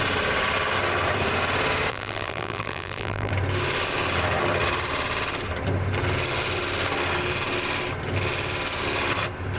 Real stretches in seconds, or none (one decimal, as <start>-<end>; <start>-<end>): 0.0-1.9; 3.3-9.6